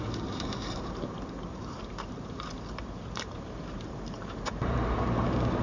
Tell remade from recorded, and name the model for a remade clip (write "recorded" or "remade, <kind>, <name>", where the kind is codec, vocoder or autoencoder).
remade, vocoder, BigVGAN v2